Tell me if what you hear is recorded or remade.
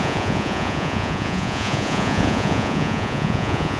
remade